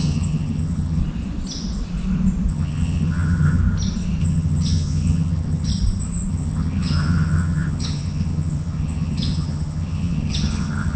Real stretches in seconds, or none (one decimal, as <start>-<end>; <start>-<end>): 1.0-2.5; 3.6-4.2; 5.7-6.3